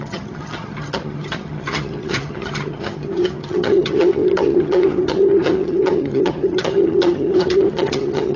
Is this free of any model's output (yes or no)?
no